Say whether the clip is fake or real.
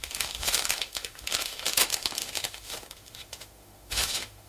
fake